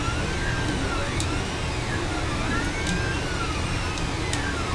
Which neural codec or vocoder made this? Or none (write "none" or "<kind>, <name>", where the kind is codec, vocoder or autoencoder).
none